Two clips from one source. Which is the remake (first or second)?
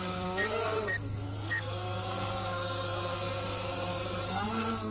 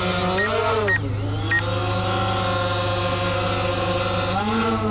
first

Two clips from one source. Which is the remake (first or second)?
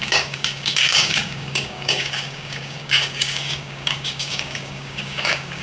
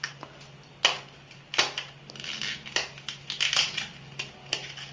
first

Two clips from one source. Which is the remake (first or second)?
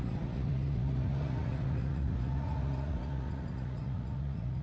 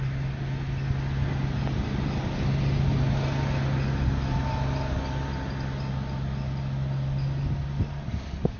first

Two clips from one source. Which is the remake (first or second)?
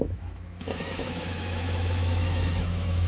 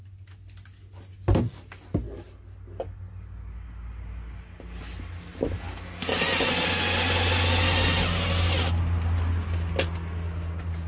first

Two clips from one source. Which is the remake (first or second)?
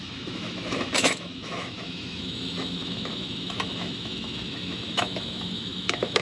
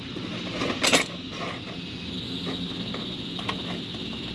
first